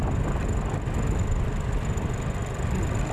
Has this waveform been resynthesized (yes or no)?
no